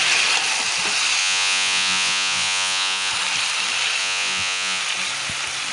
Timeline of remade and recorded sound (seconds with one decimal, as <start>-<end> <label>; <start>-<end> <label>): 0.0-1.2 recorded; 1.2-3.1 remade; 3.1-4.0 recorded; 4.0-4.8 remade; 4.8-5.7 recorded